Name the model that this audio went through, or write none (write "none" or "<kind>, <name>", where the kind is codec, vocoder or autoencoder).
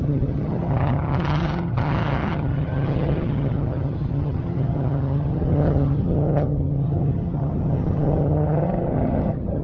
vocoder, HiFi-GAN